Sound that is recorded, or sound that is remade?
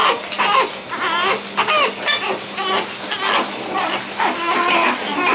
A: recorded